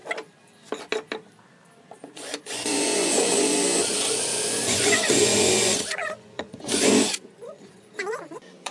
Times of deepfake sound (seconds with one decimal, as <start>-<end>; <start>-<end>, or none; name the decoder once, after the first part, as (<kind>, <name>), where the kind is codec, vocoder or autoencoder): 2.0-8.7 (vocoder, Vocos)